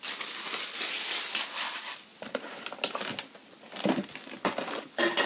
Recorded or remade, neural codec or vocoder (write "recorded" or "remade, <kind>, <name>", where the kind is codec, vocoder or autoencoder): recorded